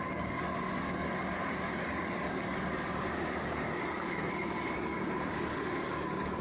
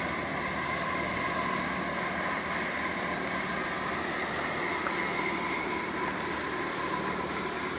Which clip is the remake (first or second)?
first